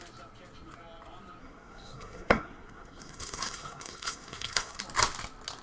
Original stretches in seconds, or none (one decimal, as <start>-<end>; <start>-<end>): 0.0-1.4; 4.8-5.6